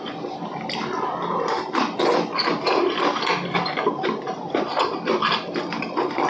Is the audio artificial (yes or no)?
no